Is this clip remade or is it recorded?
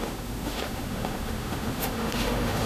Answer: remade